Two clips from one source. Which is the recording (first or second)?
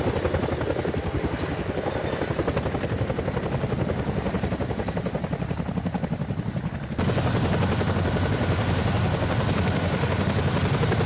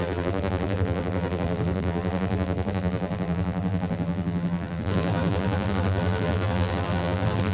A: first